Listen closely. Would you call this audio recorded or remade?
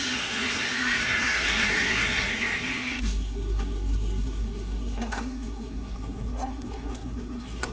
remade